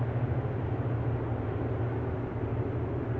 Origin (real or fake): real